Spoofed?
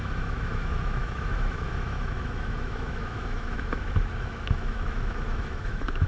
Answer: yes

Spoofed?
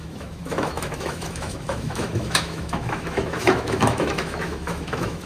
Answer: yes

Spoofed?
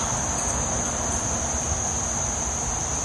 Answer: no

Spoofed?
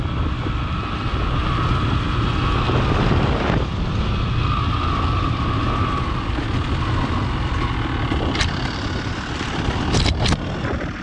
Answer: no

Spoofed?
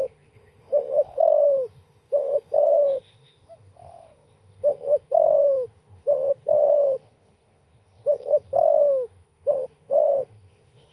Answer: yes